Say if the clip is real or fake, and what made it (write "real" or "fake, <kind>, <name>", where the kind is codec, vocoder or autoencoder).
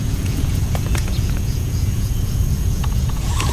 fake, vocoder, Vocos